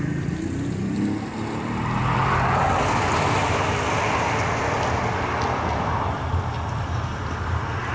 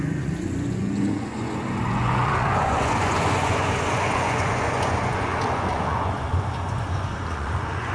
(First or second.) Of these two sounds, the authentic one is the first